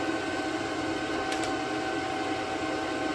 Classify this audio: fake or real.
real